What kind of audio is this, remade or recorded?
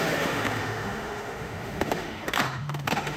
remade